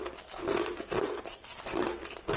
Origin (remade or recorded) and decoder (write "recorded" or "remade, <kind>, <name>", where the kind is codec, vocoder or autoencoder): remade, vocoder, BigVGAN v2